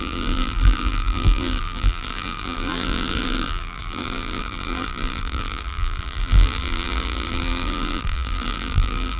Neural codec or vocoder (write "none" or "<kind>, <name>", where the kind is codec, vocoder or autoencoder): vocoder, BigVGAN v2